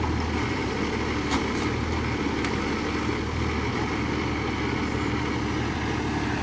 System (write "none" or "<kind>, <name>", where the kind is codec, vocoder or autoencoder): none